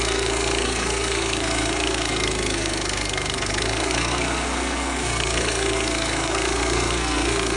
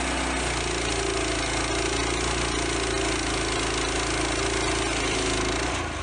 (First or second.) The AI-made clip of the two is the first